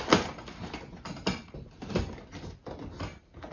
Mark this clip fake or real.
real